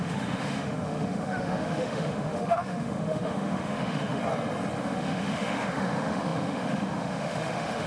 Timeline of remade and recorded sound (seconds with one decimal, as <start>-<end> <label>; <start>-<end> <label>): 0.0-4.2 remade; 4.2-4.8 recorded; 4.8-7.9 remade